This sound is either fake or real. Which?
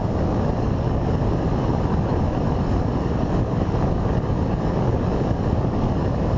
fake